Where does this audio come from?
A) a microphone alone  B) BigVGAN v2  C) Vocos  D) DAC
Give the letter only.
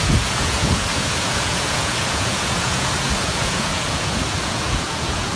C